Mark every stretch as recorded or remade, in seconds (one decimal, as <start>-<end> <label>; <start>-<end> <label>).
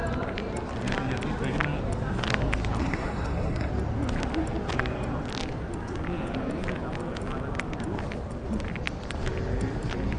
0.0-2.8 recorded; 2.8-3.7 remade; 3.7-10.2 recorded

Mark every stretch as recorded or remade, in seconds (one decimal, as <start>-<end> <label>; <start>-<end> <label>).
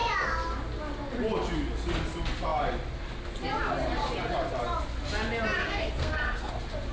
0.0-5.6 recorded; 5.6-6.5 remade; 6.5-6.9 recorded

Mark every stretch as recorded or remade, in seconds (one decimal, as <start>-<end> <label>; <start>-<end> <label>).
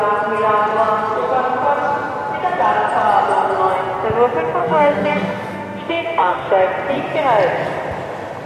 0.0-4.6 recorded; 4.6-6.5 remade; 6.5-8.5 recorded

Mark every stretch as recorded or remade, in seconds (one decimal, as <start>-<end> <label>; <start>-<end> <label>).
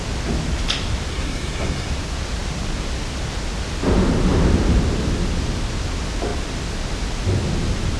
0.0-1.1 recorded; 1.1-1.9 remade; 1.9-8.0 recorded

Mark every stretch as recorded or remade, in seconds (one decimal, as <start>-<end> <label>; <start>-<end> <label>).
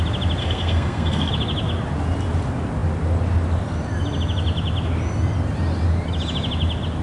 0.0-0.4 recorded; 0.4-1.3 remade; 1.3-7.0 recorded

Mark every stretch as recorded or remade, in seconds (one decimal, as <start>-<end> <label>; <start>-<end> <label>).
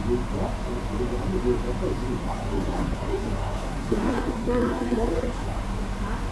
0.0-2.2 recorded; 2.2-5.6 remade; 5.6-6.3 recorded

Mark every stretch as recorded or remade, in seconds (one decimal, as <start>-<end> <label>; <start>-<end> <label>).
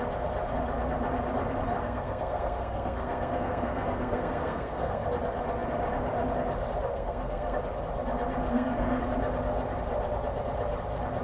0.0-1.8 recorded; 1.8-5.1 remade; 5.1-6.9 recorded; 6.9-7.6 remade; 7.6-8.5 recorded; 8.5-9.0 remade; 9.0-11.2 recorded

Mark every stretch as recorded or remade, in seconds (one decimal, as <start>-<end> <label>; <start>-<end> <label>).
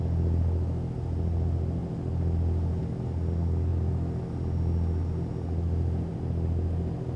0.0-7.2 recorded